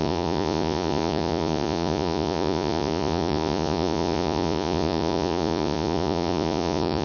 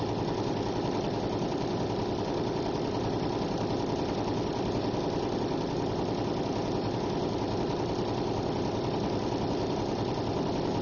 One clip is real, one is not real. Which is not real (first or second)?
first